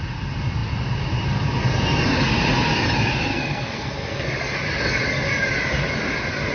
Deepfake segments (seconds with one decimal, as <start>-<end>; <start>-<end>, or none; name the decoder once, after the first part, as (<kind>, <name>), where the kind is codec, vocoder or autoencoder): 3.3-4.3 (codec, SNAC)